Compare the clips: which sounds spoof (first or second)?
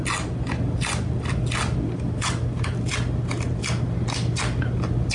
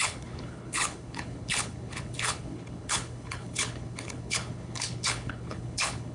second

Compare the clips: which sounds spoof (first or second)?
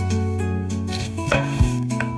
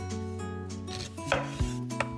first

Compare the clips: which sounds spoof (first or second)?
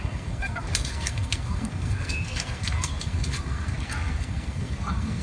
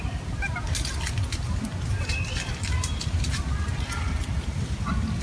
first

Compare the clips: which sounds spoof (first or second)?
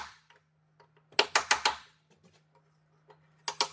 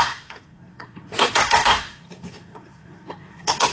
second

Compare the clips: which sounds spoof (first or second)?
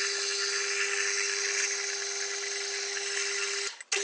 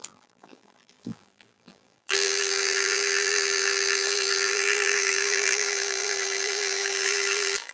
second